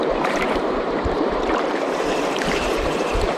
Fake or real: fake